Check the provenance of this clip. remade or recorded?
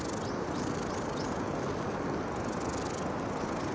recorded